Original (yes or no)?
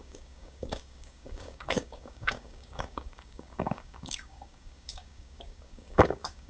no